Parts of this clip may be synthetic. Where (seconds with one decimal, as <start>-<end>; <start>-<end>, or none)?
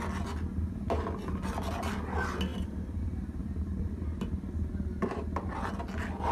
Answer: 2.5-3.0; 3.4-4.0